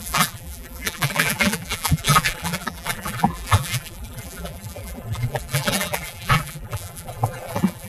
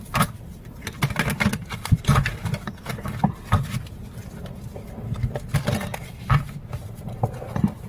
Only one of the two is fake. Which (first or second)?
first